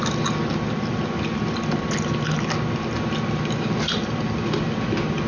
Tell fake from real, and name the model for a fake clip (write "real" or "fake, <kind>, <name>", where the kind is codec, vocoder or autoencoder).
real